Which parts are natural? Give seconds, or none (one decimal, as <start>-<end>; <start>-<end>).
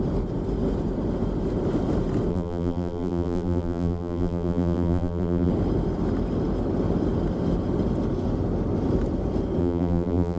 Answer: 0.0-2.3; 5.5-9.6